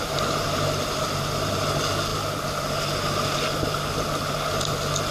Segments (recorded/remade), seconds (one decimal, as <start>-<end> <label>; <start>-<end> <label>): 0.0-5.1 recorded